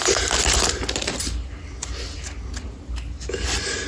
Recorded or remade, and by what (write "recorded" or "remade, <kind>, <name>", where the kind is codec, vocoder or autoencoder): recorded